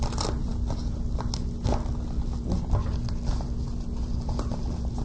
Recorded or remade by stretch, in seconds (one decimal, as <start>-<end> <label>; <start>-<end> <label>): 0.0-5.0 recorded

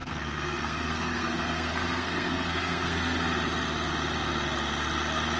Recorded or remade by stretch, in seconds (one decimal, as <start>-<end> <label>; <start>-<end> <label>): 0.0-3.2 remade; 3.2-5.4 recorded

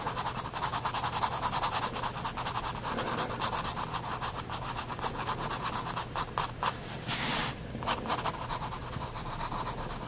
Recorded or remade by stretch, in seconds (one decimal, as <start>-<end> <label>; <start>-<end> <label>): 0.0-10.1 recorded

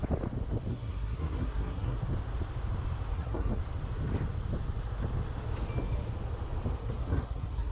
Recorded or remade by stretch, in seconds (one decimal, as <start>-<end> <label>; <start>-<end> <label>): 0.0-0.7 recorded; 0.7-2.0 remade; 2.0-3.1 recorded; 3.1-3.6 remade; 3.6-6.8 recorded; 6.8-7.7 remade

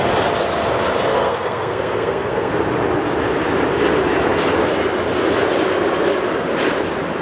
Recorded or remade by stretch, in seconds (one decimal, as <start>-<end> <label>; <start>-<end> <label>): 0.0-1.1 recorded; 1.1-2.5 remade; 2.5-7.2 recorded

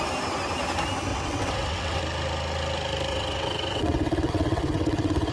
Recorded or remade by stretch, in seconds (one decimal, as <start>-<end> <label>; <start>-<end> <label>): 0.0-1.1 recorded; 1.1-2.0 remade; 2.0-3.1 recorded; 3.1-5.3 remade

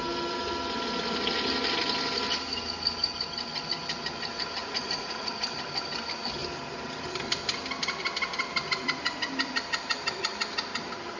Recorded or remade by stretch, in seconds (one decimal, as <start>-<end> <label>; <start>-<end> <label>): 0.0-4.6 recorded; 4.6-5.3 remade; 5.3-11.2 recorded